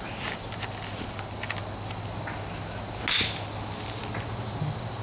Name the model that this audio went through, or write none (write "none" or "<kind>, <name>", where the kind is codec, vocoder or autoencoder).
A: none